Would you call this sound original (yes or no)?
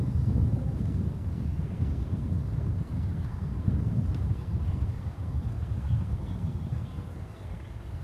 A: no